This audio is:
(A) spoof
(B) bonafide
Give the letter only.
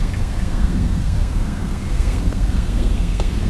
A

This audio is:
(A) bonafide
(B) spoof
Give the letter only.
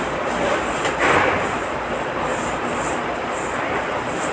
B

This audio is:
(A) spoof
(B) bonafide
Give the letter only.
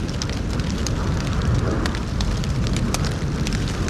B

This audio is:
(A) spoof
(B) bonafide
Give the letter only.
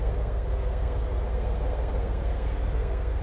A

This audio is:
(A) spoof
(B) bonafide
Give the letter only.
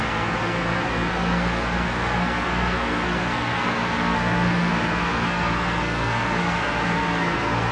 A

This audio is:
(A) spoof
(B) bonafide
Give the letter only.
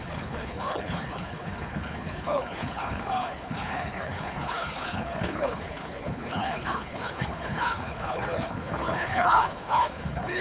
A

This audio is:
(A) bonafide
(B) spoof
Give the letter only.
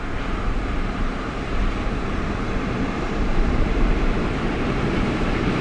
B